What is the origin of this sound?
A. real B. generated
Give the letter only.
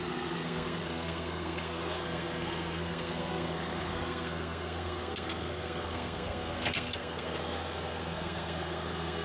B